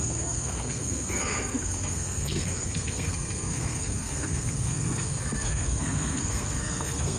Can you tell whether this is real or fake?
fake